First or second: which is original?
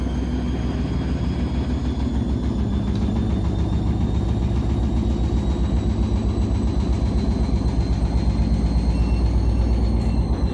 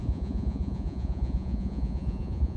first